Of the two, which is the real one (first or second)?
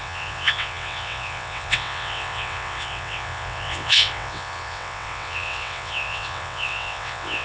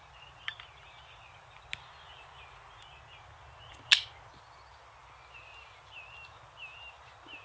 second